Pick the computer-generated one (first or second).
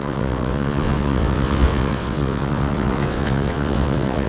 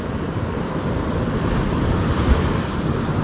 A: first